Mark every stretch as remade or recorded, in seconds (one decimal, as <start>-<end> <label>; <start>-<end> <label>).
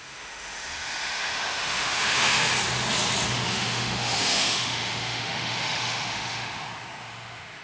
0.0-2.5 remade; 2.5-3.5 recorded; 3.5-7.6 remade